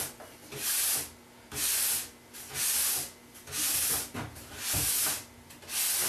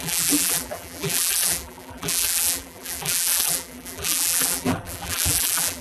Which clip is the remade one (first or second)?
second